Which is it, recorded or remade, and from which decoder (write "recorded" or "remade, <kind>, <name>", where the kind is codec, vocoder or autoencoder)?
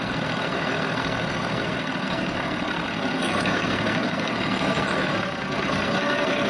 remade, codec, SNAC